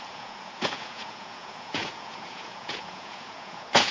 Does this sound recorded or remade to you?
remade